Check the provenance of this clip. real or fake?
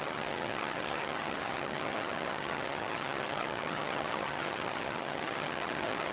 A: fake